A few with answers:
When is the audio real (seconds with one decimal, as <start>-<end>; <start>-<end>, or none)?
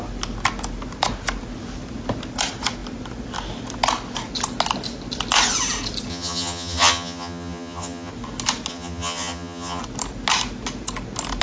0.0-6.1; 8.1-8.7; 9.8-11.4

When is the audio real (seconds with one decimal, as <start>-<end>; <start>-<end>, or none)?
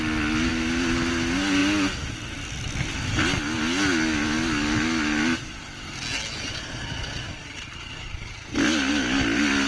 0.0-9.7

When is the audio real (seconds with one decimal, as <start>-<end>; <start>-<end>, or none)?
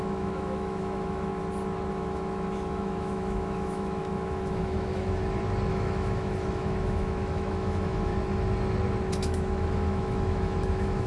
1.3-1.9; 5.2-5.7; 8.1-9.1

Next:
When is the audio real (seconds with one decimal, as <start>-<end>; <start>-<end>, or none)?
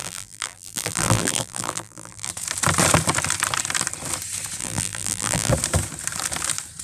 2.3-4.6; 5.5-6.8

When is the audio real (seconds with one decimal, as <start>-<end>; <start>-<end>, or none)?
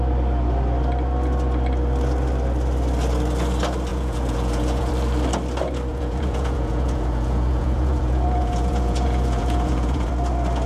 0.0-3.9; 4.9-5.9; 10.1-10.7